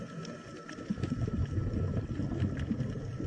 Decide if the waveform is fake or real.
real